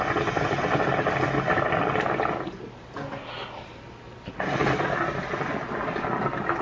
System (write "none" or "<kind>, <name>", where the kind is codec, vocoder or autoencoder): none